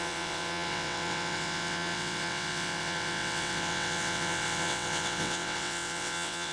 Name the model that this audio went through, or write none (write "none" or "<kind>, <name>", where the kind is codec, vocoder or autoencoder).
vocoder, WaveNeXt